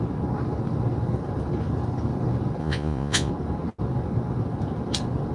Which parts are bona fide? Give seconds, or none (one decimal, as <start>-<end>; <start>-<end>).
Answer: 0.0-2.6; 3.3-5.3